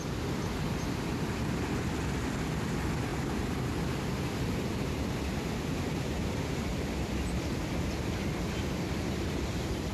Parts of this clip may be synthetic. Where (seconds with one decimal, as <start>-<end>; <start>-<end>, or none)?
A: 3.1-8.0